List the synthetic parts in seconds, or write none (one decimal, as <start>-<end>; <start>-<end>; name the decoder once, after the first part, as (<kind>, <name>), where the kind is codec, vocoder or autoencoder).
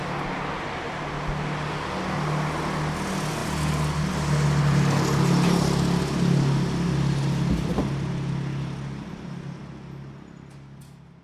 none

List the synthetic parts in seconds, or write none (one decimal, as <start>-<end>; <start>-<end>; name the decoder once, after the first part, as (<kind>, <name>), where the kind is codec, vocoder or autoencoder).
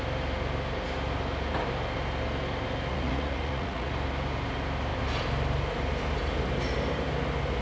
2.9-3.9 (vocoder, Vocos)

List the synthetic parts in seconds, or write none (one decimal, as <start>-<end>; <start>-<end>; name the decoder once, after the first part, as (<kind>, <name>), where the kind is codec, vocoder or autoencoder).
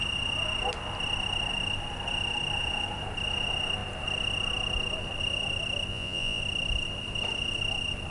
5.9-6.4 (vocoder, Vocos)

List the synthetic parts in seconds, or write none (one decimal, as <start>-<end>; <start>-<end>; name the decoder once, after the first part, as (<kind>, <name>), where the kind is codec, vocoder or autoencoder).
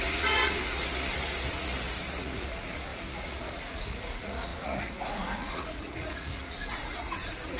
0.0-7.6 (vocoder, Vocos)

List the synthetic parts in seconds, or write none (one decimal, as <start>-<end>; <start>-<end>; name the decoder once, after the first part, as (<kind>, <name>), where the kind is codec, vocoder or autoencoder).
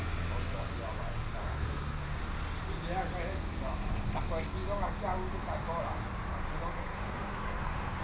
1.4-2.2 (codec, SNAC); 6.8-8.0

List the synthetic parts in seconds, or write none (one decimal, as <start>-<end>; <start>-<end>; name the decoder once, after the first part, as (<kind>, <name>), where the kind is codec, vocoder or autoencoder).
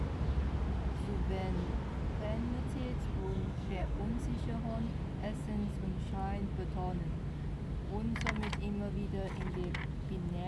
3.2-4.0 (codec, SNAC)